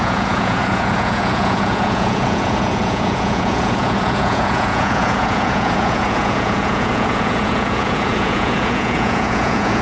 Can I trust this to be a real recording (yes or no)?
no